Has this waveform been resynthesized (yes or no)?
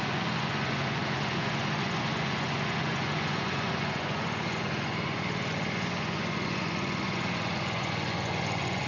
yes